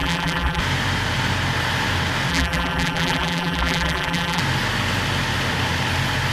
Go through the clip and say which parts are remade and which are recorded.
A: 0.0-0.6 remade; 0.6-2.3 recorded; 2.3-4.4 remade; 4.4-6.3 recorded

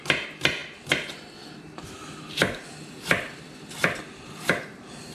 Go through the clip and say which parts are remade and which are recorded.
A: 0.0-0.6 recorded; 0.6-3.7 remade; 3.7-5.1 recorded

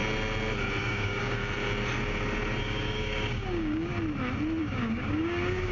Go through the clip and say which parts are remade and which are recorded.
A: 0.0-0.8 recorded; 0.8-1.4 remade; 1.4-2.6 recorded; 2.6-3.9 remade; 3.9-4.6 recorded; 4.6-5.7 remade